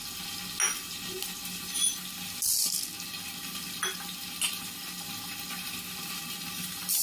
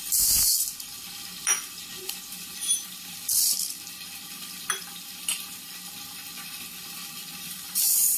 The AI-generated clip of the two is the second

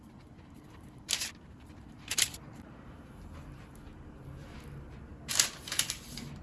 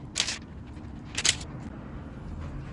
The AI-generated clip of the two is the first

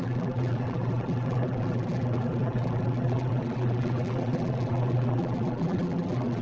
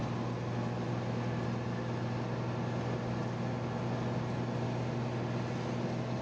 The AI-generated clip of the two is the first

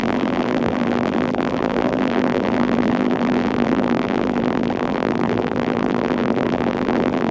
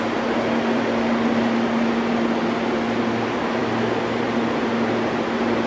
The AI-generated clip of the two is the first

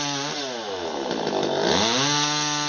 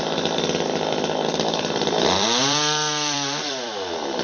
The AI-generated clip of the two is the second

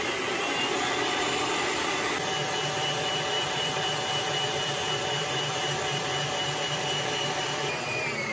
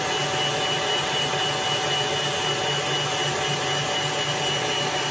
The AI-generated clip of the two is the first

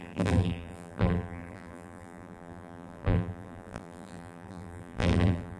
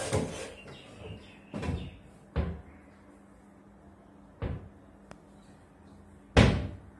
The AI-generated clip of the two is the first